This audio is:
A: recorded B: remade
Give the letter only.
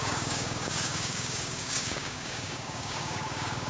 B